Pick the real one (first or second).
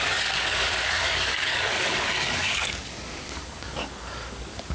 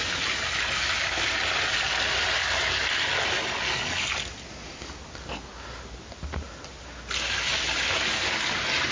second